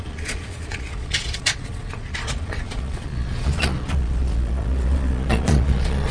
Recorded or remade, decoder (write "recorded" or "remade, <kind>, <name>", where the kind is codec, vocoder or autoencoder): remade, vocoder, Vocos